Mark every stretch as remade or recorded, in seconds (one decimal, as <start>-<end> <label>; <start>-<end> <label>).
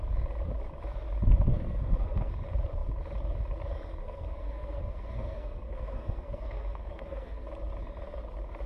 0.0-1.5 recorded; 1.5-2.3 remade; 2.3-4.0 recorded; 4.0-7.5 remade; 7.5-8.7 recorded